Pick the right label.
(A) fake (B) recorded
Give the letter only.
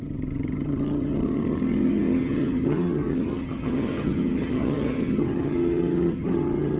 A